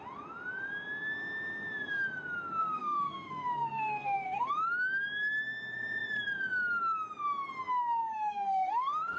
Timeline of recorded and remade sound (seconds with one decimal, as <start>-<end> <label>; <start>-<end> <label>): 0.0-2.6 recorded; 2.6-4.5 remade; 4.5-8.0 recorded; 8.0-9.2 remade